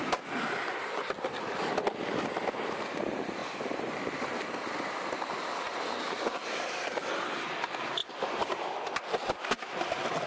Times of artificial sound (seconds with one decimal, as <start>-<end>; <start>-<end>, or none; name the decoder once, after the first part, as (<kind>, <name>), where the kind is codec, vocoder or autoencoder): none

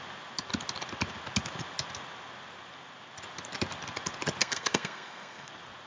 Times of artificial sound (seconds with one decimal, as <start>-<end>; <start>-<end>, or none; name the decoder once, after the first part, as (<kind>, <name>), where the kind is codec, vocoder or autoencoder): 4.4-5.5 (codec, SNAC)

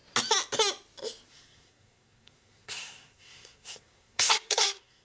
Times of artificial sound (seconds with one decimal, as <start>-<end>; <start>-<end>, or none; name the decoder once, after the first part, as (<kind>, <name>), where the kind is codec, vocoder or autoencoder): 1.3-5.0 (codec, SNAC)

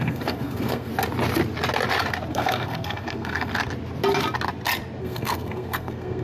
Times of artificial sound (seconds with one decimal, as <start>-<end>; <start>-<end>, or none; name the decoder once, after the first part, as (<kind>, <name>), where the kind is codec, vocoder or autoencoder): 0.0-0.9 (codec, SNAC); 2.3-3.5; 5.0-6.2

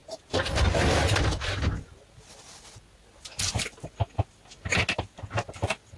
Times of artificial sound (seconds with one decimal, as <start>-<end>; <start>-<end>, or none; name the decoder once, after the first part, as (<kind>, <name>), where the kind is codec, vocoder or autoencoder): none

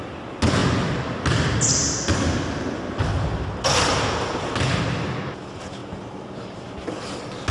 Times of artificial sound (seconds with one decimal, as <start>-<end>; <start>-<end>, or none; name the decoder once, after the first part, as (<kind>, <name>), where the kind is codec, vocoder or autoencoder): none

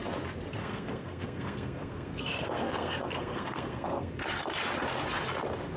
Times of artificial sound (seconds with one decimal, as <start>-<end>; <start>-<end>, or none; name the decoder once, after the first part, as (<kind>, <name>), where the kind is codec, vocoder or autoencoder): 0.6-4.1 (codec, SNAC)